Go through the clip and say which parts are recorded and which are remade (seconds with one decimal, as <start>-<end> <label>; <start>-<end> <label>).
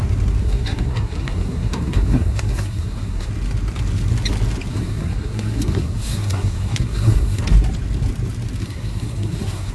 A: 0.0-0.4 recorded; 0.4-3.3 remade; 3.3-4.7 recorded; 4.7-7.4 remade; 7.4-8.6 recorded; 8.6-9.7 remade